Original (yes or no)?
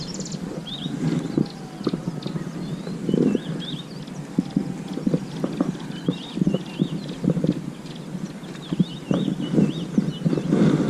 yes